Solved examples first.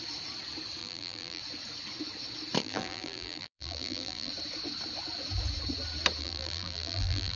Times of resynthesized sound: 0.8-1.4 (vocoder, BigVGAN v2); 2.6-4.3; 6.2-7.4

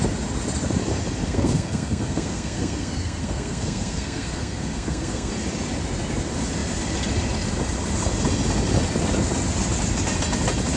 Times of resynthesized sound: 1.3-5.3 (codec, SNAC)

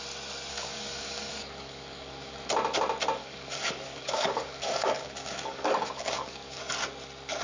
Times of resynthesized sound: 0.5-2.5 (codec, DAC); 3.2-6.6